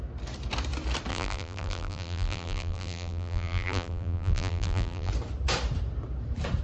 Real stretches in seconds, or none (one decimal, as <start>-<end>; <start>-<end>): 0.0-1.1; 5.1-6.6